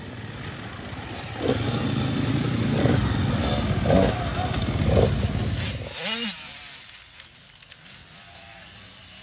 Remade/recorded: recorded